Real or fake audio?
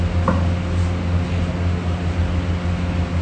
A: real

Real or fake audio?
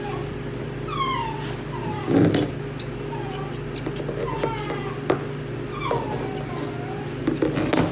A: real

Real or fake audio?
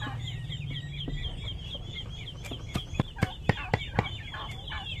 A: real